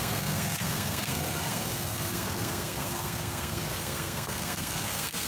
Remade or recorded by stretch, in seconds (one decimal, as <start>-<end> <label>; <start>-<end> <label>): 0.0-5.3 remade